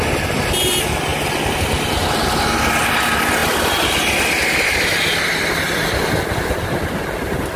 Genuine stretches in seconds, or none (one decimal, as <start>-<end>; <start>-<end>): 0.0-7.6